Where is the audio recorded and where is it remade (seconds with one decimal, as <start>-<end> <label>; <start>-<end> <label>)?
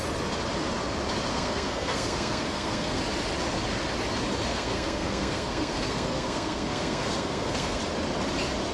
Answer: 0.0-1.3 recorded; 1.3-3.0 remade; 3.0-4.5 recorded; 4.5-7.8 remade; 7.8-8.7 recorded